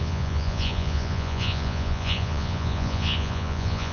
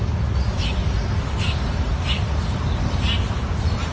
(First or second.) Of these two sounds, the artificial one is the first